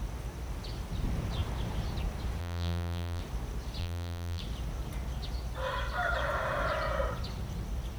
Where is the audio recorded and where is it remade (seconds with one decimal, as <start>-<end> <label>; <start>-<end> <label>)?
0.0-2.4 recorded; 2.4-3.2 remade; 3.2-3.8 recorded; 3.8-4.4 remade; 4.4-8.0 recorded